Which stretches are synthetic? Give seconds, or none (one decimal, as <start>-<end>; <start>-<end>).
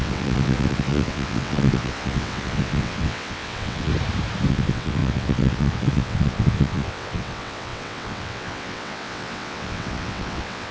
0.0-3.9; 4.5-10.7